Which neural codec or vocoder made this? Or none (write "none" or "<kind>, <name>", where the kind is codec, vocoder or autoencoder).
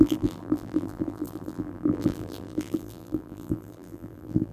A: vocoder, BigVGAN v2